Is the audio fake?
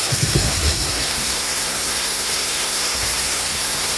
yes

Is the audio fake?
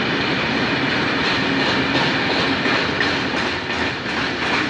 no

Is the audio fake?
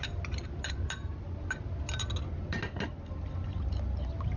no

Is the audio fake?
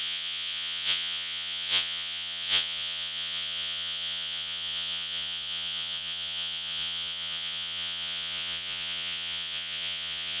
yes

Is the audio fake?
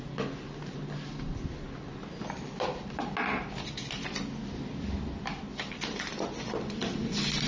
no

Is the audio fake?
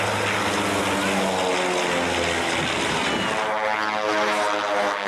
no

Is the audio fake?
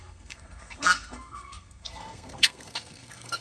yes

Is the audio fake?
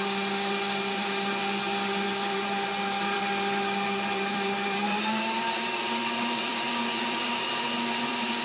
yes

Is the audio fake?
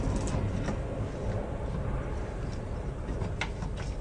no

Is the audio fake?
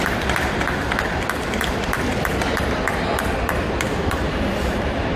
yes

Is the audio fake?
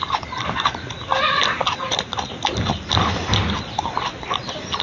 no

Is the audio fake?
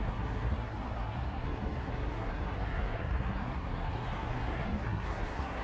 yes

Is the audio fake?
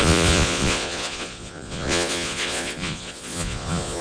yes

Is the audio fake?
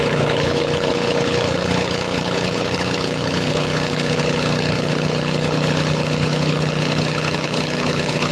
yes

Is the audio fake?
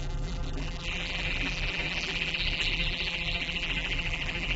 yes